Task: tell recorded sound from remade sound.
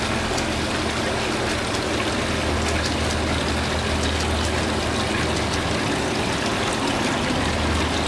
recorded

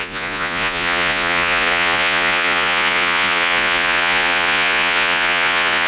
remade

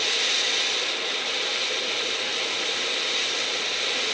recorded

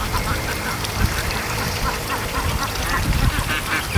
remade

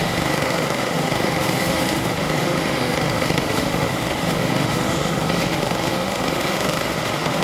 remade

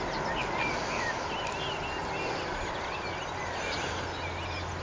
recorded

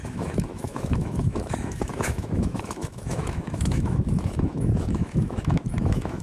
remade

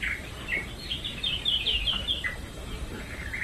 remade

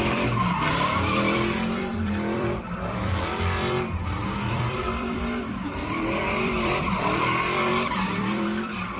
remade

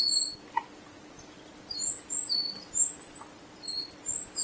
recorded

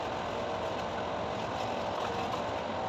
recorded